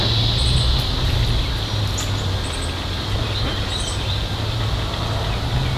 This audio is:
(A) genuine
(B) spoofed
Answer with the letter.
A